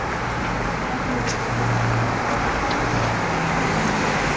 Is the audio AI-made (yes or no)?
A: no